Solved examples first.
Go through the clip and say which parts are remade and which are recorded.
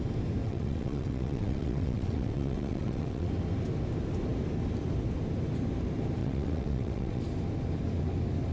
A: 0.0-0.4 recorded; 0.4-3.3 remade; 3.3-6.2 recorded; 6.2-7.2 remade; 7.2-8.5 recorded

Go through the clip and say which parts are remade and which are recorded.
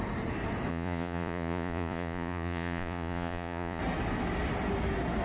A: 0.0-0.7 recorded; 0.7-3.8 remade; 3.8-5.2 recorded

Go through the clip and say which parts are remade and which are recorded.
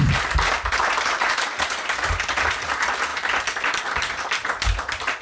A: 0.0-5.2 recorded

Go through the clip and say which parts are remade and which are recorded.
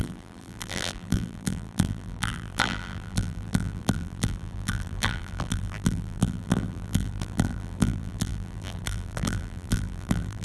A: 0.0-10.4 remade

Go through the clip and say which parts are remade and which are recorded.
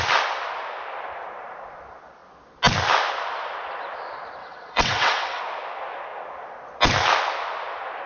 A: 0.0-4.4 recorded; 4.4-5.4 remade; 5.4-8.1 recorded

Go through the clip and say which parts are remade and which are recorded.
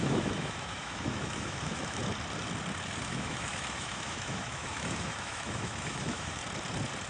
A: 0.0-2.0 remade; 2.0-3.1 recorded; 3.1-6.4 remade; 6.4-7.1 recorded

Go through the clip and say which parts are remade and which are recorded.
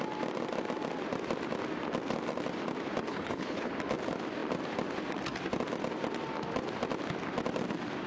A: 0.0-3.1 recorded; 3.1-3.7 remade; 3.7-8.1 recorded